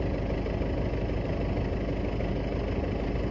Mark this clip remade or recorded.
recorded